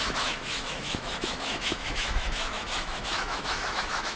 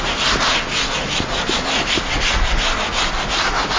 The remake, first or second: first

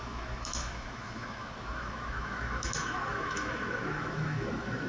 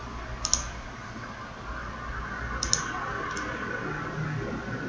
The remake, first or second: first